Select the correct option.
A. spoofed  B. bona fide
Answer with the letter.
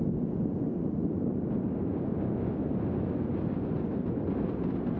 B